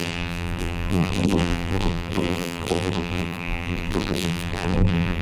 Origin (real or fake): fake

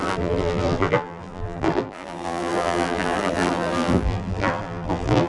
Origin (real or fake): fake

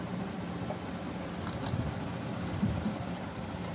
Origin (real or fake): real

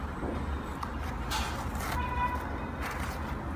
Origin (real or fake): real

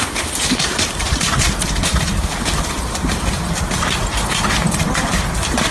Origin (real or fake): fake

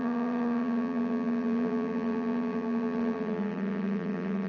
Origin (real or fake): fake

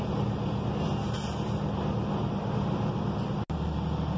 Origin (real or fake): real